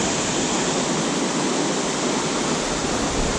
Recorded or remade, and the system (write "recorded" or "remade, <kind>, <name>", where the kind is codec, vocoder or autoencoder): recorded